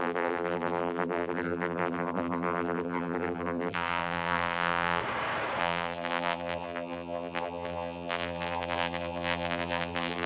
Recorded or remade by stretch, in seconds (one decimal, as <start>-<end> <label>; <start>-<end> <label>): 0.0-5.0 remade; 5.0-5.6 recorded; 5.6-10.3 remade